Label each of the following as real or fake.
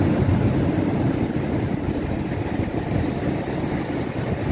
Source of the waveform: real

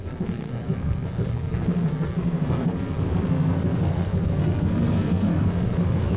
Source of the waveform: fake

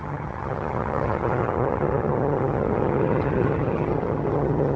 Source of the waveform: fake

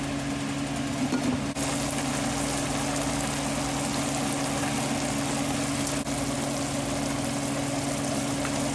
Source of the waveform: real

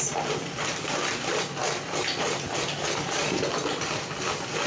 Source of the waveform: real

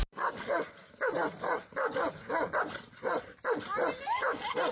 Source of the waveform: real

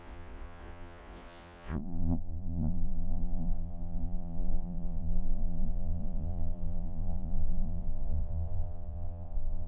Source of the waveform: fake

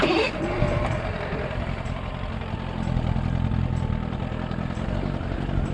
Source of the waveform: fake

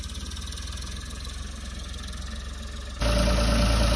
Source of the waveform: real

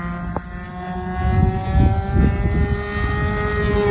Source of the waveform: real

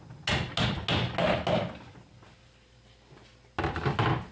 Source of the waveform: real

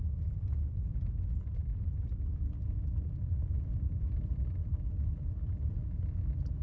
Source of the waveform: real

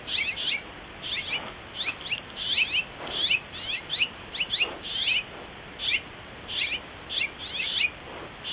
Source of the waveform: real